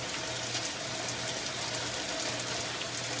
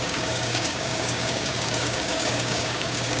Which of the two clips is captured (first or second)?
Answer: first